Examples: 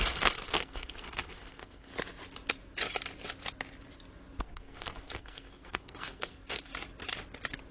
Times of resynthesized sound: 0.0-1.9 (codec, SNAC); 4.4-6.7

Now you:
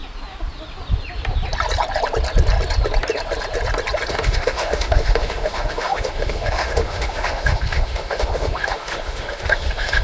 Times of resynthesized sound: 4.1-10.0 (autoencoder, DAC-VAE)

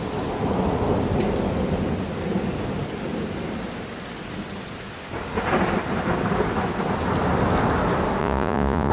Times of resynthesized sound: 8.2-8.9 (vocoder, Vocos)

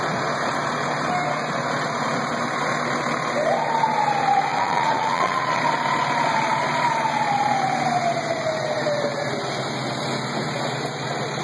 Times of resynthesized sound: 4.5-5.6 (vocoder, Vocos)